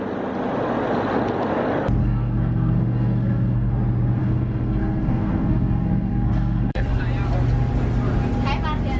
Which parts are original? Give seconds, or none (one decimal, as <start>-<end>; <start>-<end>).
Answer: 0.0-2.0; 3.7-4.2; 7.0-9.0